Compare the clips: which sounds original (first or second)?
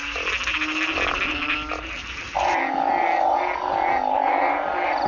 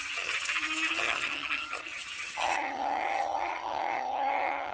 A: first